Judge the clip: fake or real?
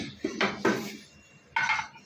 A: real